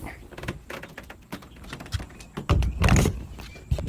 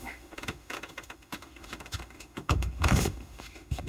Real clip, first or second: first